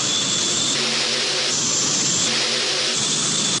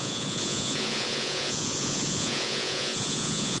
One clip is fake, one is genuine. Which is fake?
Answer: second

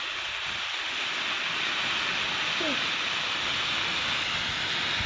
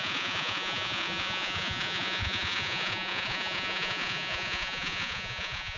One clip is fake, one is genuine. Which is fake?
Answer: second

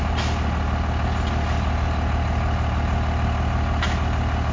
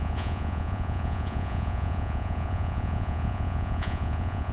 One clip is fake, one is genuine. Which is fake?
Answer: second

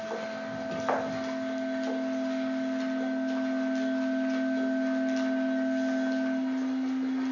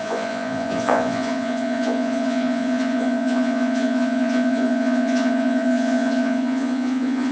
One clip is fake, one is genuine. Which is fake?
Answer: second